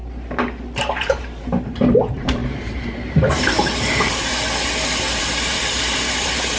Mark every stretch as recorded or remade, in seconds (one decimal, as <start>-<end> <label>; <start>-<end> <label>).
0.0-0.8 recorded; 0.8-4.3 remade; 4.3-5.2 recorded; 5.2-6.6 remade